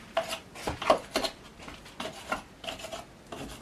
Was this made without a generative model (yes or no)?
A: yes